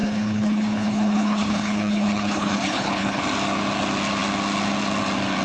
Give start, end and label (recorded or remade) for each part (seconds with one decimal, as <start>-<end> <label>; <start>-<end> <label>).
0.0-3.2 remade; 3.2-5.4 recorded